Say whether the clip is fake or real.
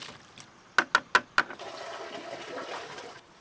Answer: real